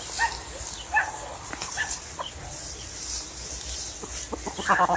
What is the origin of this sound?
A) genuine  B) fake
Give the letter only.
A